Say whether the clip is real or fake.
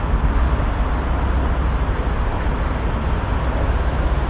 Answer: real